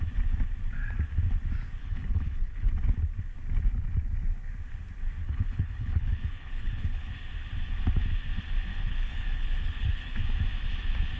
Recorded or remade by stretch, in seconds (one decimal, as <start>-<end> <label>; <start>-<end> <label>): 0.0-1.8 recorded; 1.8-2.7 remade; 2.7-5.2 recorded; 5.2-7.1 remade; 7.1-8.7 recorded; 8.7-10.2 remade; 10.2-11.2 recorded